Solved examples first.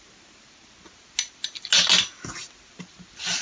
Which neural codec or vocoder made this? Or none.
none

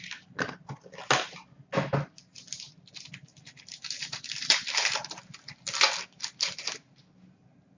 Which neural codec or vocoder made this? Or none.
none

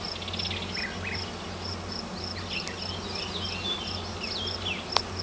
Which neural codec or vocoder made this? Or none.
none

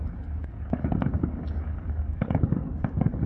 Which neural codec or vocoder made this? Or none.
codec, DAC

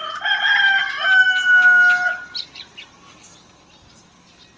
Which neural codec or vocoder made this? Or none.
none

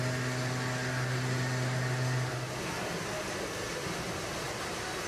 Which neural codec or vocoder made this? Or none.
none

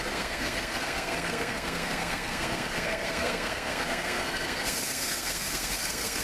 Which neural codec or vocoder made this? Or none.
codec, SNAC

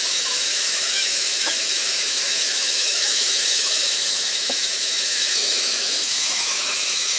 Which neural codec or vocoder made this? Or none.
autoencoder, DAC-VAE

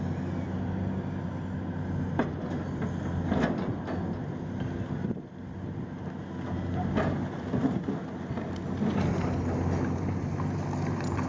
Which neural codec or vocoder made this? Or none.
none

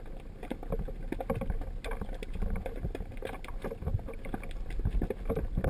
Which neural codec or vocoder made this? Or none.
none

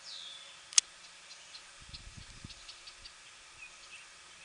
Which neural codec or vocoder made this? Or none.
none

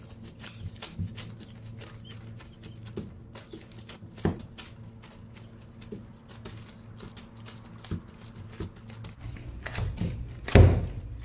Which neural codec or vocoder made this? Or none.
none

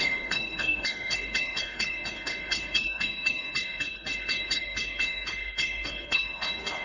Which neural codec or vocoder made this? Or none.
codec, HILCodec